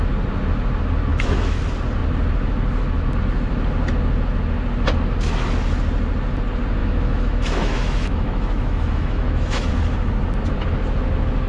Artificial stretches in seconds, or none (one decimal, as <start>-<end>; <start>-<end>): 1.1-1.6; 6.8-9.7